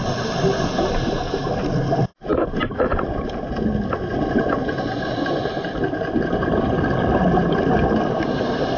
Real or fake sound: real